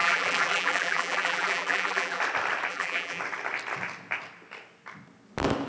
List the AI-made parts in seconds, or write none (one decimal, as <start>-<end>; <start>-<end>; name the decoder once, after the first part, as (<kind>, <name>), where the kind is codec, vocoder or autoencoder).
0.0-2.2 (vocoder, BigVGAN v2); 2.7-3.2